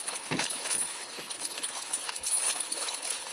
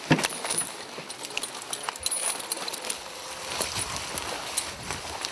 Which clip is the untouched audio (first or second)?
second